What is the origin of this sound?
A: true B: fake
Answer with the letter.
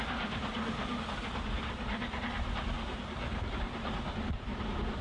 A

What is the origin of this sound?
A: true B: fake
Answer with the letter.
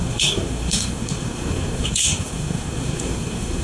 B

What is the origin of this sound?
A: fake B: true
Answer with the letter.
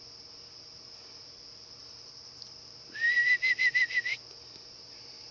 A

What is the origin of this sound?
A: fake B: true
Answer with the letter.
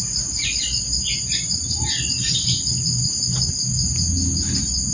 B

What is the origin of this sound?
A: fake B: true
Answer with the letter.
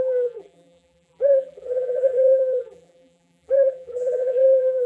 A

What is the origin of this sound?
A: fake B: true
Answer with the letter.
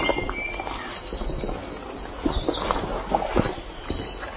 B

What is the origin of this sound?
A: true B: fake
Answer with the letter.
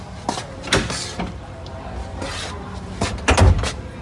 A